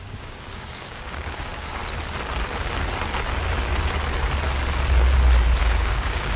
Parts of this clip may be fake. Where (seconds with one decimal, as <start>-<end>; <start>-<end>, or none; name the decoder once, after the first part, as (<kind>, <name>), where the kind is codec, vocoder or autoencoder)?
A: 0.0-1.8 (codec, DAC); 5.6-6.4